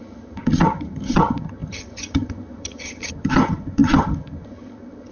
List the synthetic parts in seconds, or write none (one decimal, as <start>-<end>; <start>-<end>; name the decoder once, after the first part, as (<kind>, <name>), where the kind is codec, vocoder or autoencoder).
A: 0.0-5.1 (vocoder, HiFi-GAN)